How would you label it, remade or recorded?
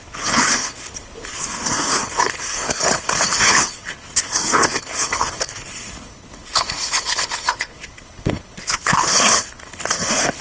remade